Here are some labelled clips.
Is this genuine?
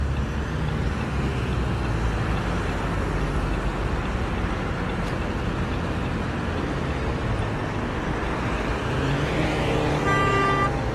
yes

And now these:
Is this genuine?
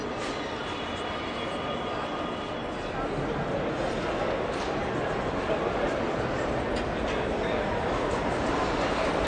yes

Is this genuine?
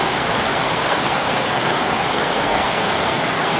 no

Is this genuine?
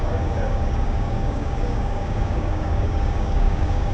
no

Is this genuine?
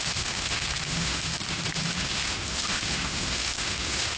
no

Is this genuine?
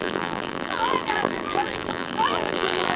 no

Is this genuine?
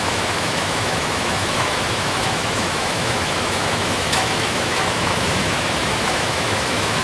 no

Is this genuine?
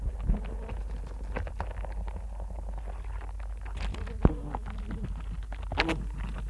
yes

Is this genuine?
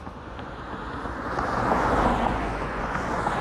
no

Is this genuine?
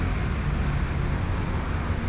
yes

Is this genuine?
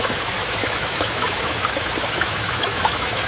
no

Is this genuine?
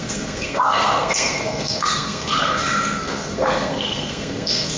no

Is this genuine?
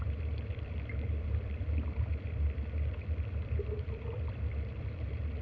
no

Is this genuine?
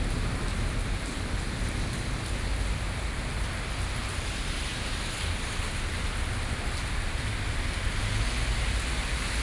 yes